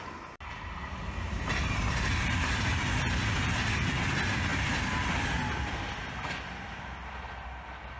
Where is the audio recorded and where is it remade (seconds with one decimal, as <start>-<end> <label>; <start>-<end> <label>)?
0.0-8.0 recorded